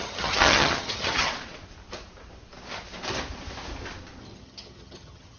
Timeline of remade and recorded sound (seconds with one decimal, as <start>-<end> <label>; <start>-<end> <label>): 0.0-1.3 remade; 1.3-4.2 recorded; 4.2-5.4 remade